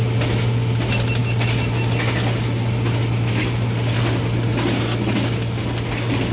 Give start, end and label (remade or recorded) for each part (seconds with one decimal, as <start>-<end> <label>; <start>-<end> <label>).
0.0-6.3 recorded